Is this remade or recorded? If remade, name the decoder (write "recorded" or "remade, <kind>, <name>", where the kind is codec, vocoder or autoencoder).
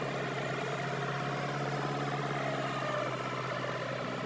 recorded